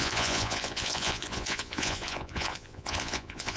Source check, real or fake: fake